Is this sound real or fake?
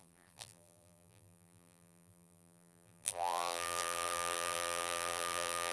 fake